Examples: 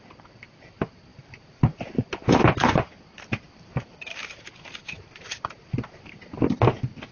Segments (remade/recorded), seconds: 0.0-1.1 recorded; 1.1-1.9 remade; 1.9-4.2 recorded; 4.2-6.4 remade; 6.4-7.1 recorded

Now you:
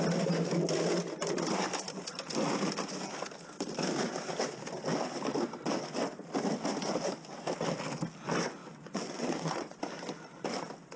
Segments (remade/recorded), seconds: 0.0-8.6 recorded; 8.6-9.8 remade; 9.8-11.0 recorded